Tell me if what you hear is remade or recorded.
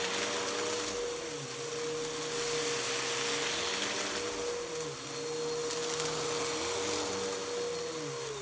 recorded